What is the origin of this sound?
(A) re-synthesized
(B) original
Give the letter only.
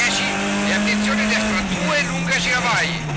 B